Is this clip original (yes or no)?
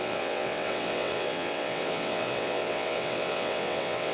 no